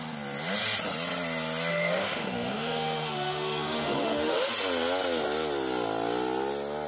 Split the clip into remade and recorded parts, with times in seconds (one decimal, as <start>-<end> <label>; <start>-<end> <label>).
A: 0.0-1.7 recorded; 1.7-4.5 remade; 4.5-6.9 recorded